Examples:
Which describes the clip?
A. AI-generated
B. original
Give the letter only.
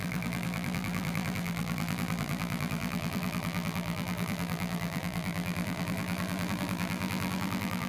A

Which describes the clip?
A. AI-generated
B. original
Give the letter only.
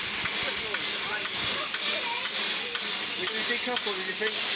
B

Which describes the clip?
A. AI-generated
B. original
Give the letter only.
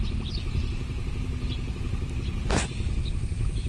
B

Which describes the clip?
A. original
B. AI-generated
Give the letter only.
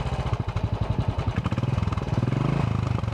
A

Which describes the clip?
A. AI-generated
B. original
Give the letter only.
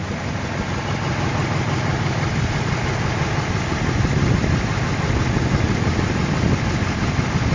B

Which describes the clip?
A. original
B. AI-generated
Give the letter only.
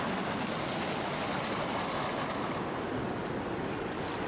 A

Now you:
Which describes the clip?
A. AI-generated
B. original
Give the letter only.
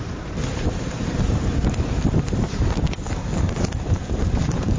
A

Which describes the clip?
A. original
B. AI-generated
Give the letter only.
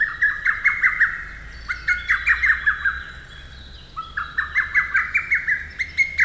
A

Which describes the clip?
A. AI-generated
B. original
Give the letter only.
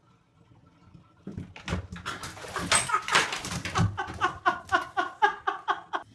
B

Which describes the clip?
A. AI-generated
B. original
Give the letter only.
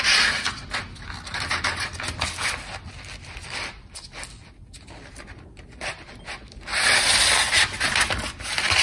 B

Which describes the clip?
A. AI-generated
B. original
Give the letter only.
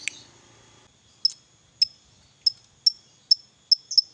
B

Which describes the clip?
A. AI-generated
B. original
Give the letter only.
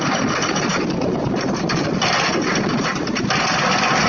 B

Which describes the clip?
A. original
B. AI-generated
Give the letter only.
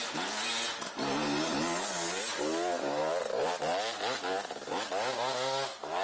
A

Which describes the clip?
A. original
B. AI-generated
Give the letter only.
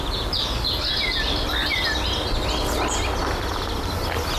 A